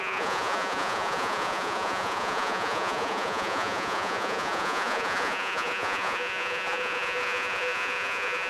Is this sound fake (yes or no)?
yes